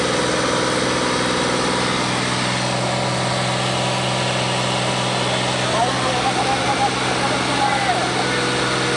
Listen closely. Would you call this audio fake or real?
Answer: real